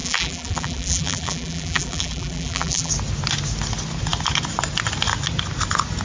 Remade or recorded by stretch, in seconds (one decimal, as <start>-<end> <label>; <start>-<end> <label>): 0.0-2.9 remade; 2.9-6.0 recorded